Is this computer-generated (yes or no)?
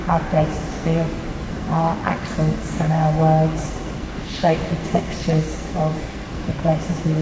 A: yes